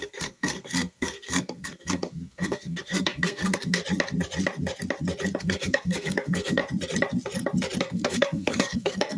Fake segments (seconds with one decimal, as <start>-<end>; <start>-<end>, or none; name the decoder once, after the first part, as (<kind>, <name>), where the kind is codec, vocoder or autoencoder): 0.0-3.8 (codec, SNAC); 5.4-6.6; 7.8-9.2